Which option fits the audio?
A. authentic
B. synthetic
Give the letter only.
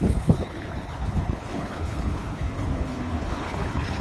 B